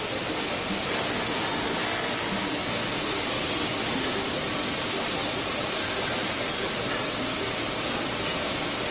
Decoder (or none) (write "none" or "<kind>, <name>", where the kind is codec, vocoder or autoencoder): none